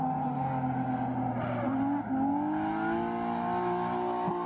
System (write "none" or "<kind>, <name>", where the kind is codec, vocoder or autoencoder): none